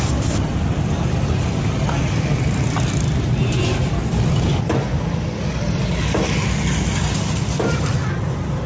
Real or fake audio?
real